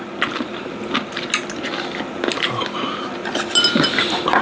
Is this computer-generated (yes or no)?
no